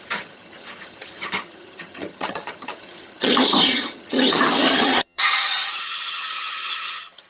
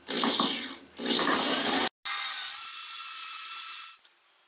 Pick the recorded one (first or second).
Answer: second